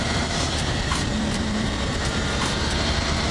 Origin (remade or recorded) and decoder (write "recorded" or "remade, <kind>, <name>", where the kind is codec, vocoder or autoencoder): remade, vocoder, BigVGAN v2